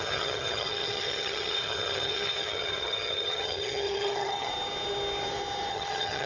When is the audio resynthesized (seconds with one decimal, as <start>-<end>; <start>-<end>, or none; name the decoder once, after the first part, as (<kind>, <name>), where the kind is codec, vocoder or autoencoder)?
0.0-4.5 (vocoder, HiFi-GAN); 5.7-6.3